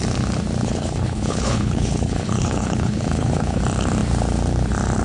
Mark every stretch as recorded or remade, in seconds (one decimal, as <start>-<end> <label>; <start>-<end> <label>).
0.0-0.6 recorded; 0.6-3.6 remade; 3.6-5.0 recorded